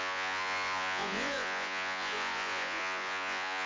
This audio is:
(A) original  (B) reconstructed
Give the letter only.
B